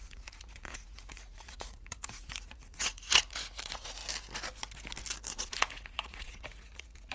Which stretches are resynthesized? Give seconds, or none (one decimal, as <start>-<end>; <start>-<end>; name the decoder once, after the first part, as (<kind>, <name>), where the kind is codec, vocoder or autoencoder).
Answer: 0.0-4.0 (vocoder, Vocos); 5.3-7.1